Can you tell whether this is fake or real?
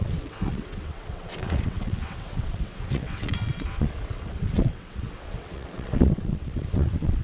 fake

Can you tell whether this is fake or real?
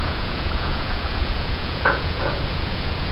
fake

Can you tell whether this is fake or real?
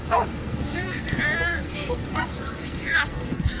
fake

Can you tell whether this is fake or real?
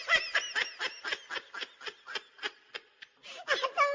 real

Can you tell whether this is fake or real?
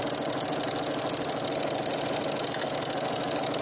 real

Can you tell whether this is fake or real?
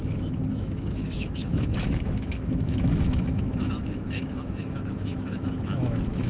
fake